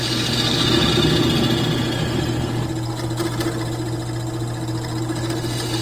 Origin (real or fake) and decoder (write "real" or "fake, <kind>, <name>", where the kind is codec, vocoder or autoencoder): real